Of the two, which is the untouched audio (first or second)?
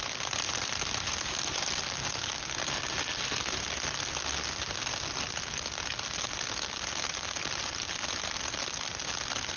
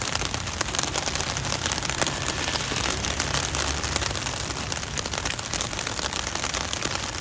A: first